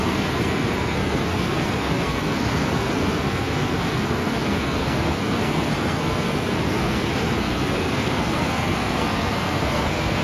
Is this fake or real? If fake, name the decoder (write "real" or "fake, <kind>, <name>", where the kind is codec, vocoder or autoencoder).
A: fake, codec, SNAC